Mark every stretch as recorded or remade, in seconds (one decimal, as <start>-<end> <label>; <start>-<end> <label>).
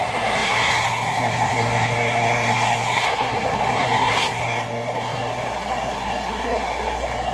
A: 0.0-7.3 remade